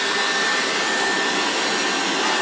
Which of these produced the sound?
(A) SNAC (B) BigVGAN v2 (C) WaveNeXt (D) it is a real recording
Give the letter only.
D